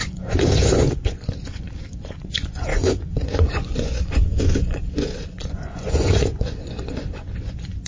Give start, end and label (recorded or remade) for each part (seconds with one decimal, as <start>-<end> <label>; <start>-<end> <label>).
0.0-7.9 remade